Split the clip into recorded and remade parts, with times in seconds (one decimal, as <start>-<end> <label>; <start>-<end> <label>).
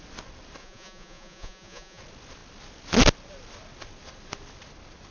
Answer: 0.0-0.6 recorded; 0.6-2.0 remade; 2.0-5.1 recorded